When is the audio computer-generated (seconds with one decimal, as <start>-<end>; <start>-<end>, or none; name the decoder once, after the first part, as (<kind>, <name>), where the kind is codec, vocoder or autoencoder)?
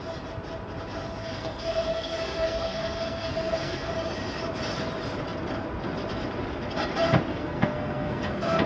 1.2-3.9 (codec, SNAC); 7.3-8.7